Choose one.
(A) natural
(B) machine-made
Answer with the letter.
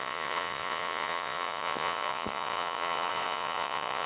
B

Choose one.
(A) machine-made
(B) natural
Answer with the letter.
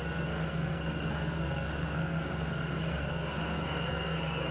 A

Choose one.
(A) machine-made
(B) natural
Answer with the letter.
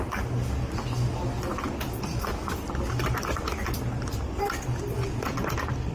B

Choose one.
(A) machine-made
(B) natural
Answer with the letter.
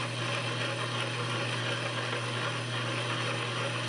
B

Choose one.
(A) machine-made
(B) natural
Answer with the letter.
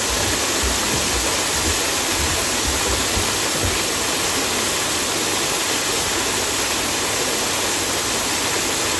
B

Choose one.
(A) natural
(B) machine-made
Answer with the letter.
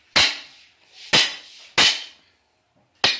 A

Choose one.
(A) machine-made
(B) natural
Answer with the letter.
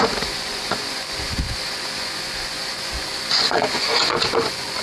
A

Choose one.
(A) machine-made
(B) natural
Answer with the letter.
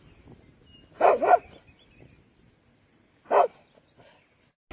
B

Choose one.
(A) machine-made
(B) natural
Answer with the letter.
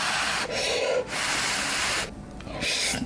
B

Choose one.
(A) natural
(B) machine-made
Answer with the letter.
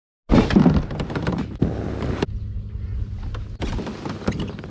A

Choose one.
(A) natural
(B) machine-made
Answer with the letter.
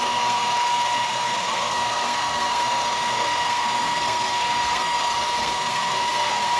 B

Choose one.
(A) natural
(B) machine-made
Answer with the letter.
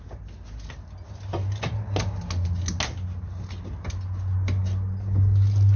A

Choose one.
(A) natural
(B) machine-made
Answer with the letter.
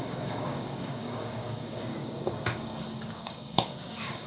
B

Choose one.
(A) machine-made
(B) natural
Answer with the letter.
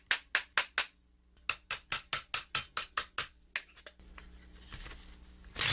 B